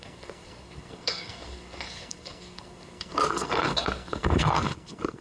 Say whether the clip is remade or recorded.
remade